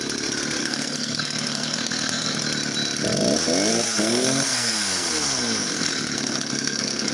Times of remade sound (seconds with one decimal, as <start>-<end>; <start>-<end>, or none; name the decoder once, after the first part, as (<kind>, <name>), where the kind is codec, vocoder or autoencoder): 0.6-2.4 (codec, SNAC); 3.7-7.1